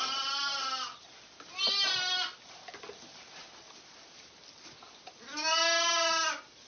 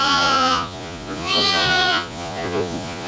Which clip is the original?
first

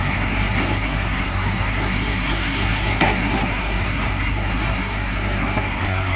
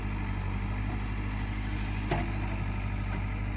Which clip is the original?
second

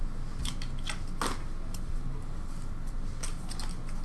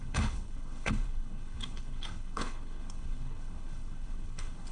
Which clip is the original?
first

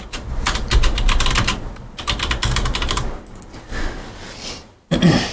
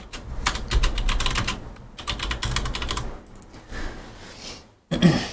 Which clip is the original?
second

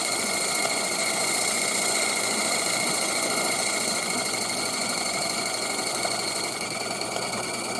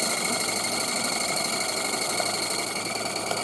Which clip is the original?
second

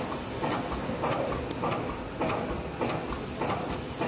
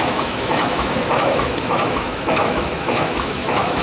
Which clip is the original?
first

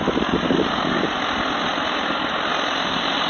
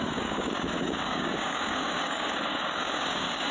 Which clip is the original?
first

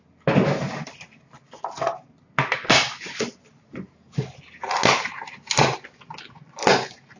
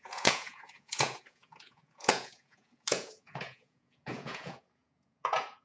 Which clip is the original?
first